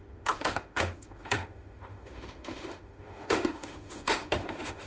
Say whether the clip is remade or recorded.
remade